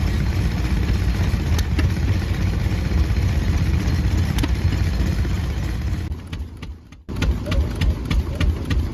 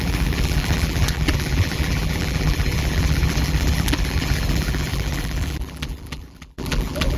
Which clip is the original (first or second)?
first